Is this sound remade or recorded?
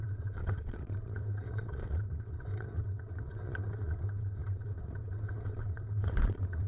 remade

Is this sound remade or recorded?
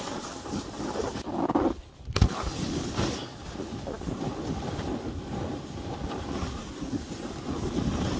recorded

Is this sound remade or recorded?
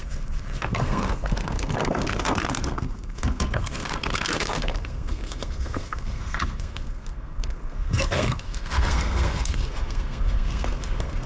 remade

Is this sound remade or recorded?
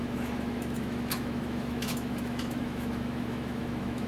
remade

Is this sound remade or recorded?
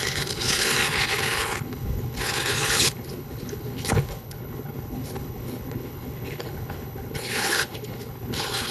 remade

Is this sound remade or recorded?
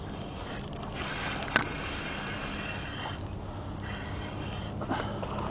recorded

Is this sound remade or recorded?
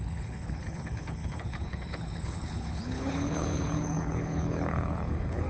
remade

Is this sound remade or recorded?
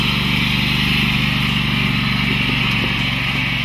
recorded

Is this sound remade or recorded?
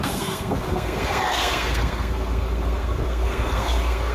remade